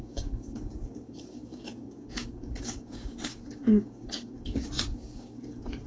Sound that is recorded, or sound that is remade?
remade